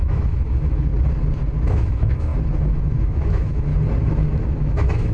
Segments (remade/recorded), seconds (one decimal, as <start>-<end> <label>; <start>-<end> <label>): 0.0-0.9 remade; 0.9-1.7 recorded; 1.7-2.3 remade; 2.3-3.0 recorded; 3.0-3.7 remade; 3.7-4.5 recorded; 4.5-5.1 remade